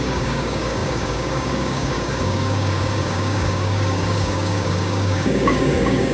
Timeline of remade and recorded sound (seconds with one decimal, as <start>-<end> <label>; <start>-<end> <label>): 0.0-6.1 remade